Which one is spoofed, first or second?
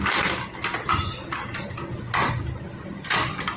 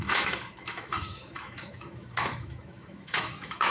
second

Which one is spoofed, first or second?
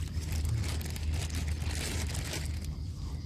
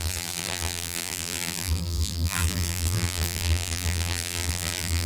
second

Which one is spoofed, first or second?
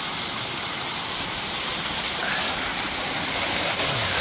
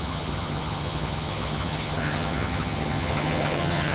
second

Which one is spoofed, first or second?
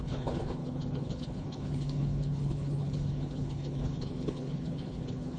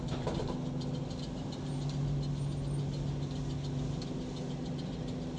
first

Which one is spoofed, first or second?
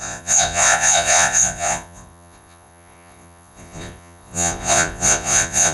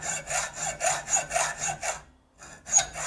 first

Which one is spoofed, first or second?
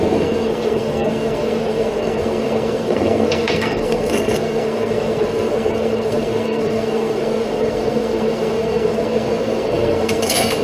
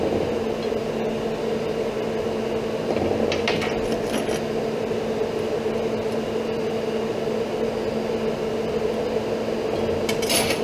first